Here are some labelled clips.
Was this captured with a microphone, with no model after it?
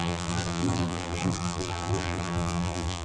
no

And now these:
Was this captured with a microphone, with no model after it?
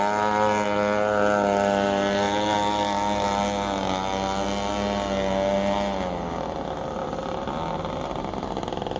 yes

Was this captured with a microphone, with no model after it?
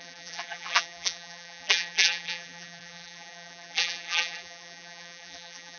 no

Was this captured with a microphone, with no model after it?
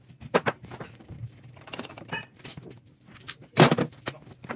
no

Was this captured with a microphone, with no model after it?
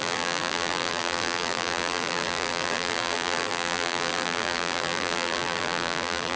no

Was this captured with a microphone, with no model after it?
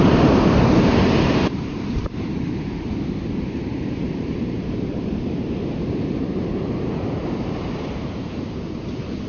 no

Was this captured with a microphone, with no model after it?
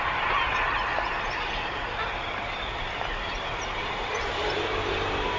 no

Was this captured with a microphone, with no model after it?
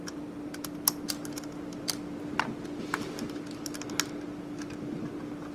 yes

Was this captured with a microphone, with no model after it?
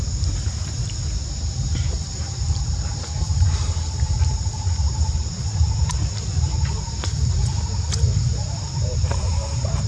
no